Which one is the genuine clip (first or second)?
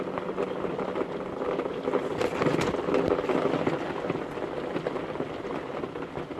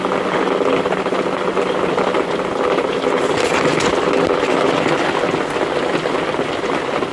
second